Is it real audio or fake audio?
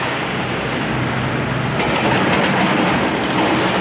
real